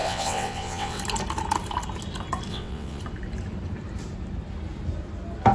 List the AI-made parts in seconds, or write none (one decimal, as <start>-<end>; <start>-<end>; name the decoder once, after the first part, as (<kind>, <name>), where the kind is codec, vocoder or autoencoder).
0.0-1.0 (vocoder, WaveNeXt); 2.5-3.0